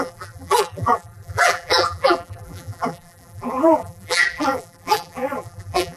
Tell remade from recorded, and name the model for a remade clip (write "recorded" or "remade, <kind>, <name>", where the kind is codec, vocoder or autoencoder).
remade, vocoder, BigVGAN v2